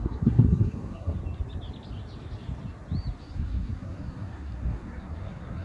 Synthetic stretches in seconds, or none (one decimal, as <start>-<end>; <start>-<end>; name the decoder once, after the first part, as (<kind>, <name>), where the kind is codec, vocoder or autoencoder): 0.0-1.2 (codec, SNAC); 3.2-5.6